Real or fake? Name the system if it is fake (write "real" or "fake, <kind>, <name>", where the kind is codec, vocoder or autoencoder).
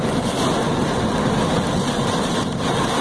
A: real